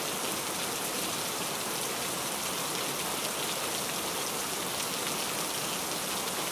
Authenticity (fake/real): real